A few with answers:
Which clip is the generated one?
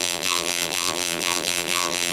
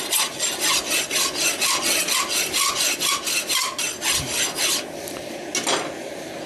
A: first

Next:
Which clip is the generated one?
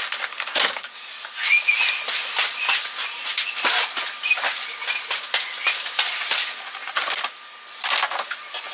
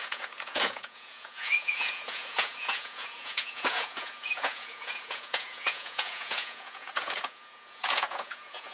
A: second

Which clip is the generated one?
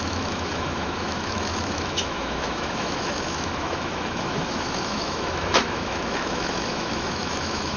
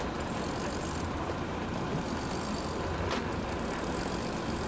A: first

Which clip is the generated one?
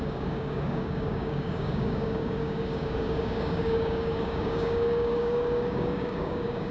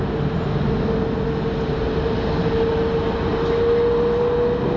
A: first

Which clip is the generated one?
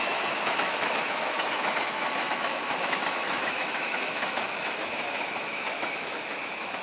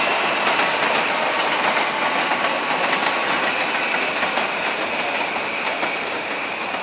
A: first